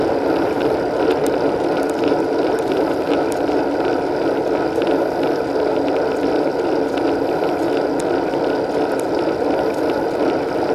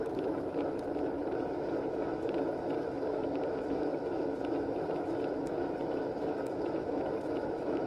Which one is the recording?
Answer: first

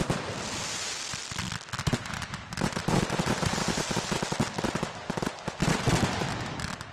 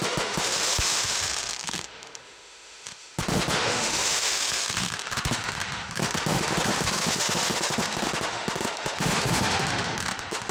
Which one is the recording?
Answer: first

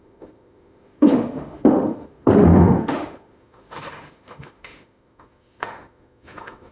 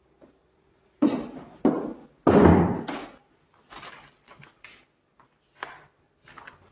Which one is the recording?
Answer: second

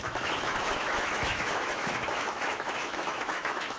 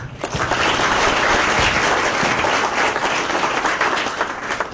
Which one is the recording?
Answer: second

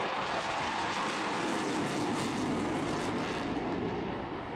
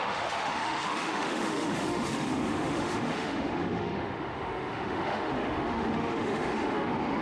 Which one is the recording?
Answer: first